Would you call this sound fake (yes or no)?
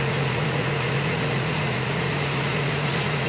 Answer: yes